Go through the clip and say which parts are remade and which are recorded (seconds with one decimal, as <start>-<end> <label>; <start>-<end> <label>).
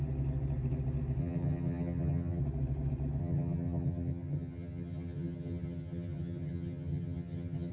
0.0-1.2 recorded; 1.2-2.4 remade; 2.4-3.2 recorded; 3.2-7.7 remade